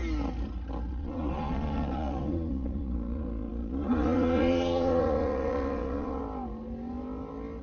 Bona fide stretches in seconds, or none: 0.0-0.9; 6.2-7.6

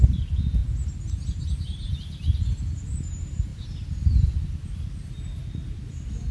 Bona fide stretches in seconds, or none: 0.0-6.3

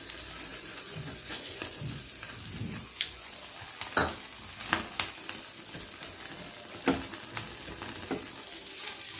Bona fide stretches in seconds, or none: 0.0-0.5; 2.0-2.8; 3.4-9.2